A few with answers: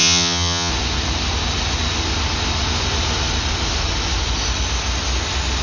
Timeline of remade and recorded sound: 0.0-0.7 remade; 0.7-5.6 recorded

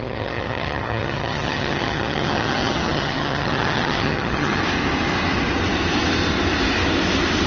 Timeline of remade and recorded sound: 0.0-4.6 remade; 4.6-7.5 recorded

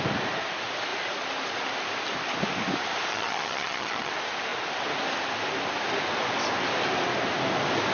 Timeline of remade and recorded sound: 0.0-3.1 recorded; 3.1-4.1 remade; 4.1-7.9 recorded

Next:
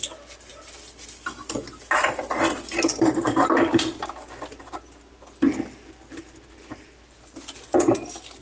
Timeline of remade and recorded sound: 0.0-8.4 recorded

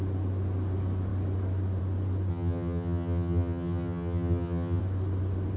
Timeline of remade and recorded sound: 0.0-2.3 recorded; 2.3-4.8 remade; 4.8-5.6 recorded

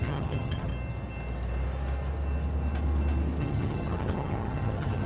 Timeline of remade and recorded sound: 0.0-0.7 remade; 0.7-3.4 recorded; 3.4-5.1 remade

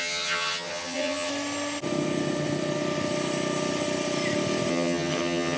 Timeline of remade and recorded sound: 0.0-1.3 remade; 1.3-4.7 recorded; 4.7-5.6 remade

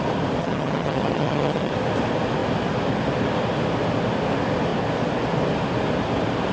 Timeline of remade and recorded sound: 0.0-0.4 recorded; 0.4-1.7 remade; 1.7-6.5 recorded